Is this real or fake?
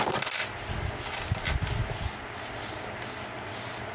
real